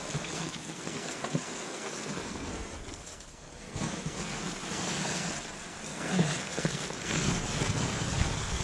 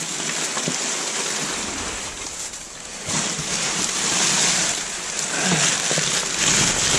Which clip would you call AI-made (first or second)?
first